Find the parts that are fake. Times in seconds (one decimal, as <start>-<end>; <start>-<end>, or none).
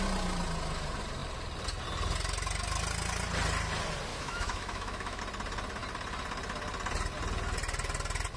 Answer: 4.1-5.2